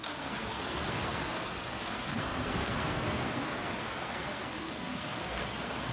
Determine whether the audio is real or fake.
fake